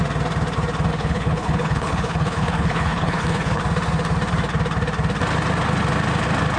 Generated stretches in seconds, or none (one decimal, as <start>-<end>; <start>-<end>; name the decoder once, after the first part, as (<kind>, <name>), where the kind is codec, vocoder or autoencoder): 0.9-3.6 (codec, HILCodec)